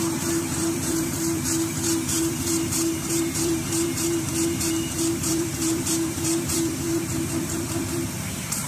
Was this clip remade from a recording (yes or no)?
yes